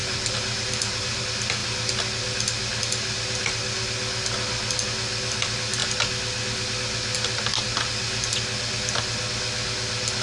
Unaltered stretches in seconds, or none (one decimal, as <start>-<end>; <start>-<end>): 1.2-10.2